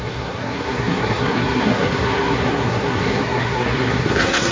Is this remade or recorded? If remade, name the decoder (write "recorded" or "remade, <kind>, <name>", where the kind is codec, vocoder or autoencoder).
remade, codec, SNAC